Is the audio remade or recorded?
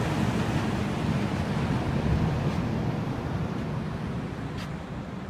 recorded